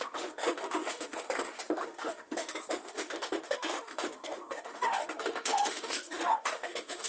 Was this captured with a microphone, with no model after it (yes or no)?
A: no